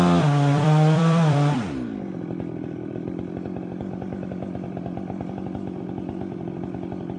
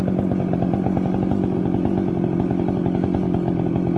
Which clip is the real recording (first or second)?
second